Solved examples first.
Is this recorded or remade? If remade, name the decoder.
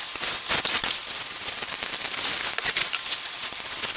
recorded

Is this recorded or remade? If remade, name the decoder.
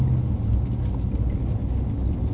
recorded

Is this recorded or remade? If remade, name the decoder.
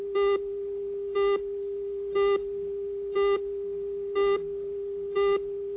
recorded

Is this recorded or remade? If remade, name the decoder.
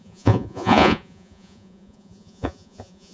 remade, vocoder, Vocos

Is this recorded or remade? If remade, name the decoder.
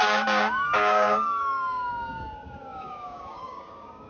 remade, codec, DAC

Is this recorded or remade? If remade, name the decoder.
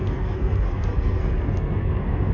remade, codec, SNAC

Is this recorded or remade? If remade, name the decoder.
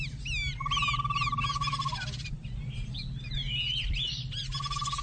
recorded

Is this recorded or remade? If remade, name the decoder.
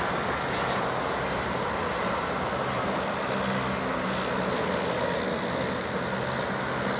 recorded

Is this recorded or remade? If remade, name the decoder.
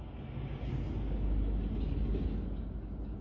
recorded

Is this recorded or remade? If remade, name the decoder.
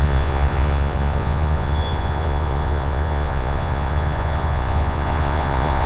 remade, vocoder, Vocos